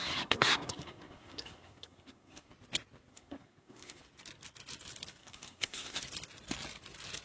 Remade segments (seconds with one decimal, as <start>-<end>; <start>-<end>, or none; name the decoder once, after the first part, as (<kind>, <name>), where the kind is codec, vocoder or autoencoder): 0.0-2.5 (codec, SNAC); 3.1-4.0; 5.2-6.0